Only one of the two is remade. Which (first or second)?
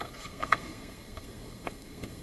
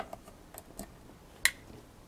first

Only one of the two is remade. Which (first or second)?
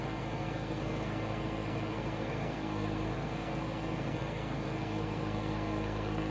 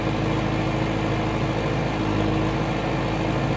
first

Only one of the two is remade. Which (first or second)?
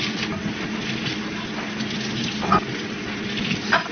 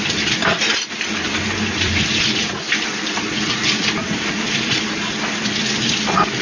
second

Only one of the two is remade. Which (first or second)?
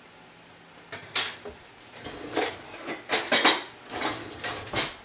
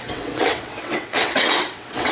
second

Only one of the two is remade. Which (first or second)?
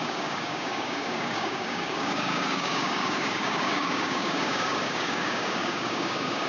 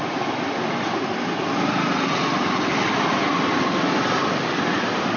first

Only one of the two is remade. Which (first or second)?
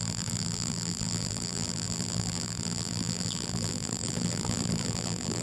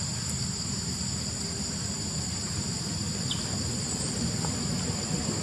first